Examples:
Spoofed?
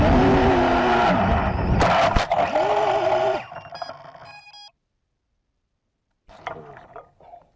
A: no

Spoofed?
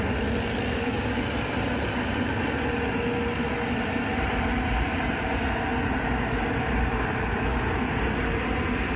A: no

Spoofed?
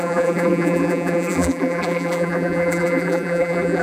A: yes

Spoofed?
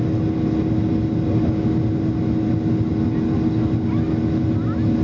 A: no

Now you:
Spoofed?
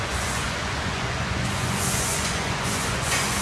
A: yes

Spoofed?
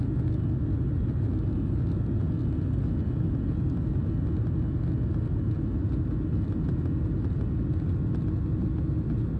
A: no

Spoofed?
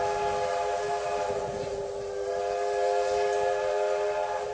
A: no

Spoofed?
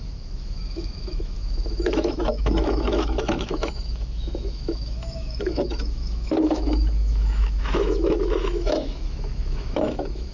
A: yes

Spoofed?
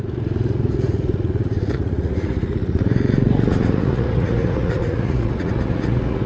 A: yes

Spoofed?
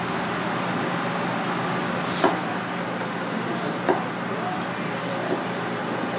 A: no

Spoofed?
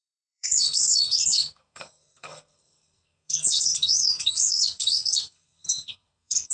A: yes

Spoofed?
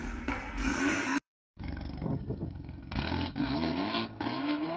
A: yes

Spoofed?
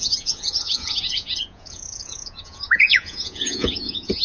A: yes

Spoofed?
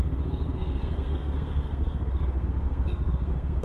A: yes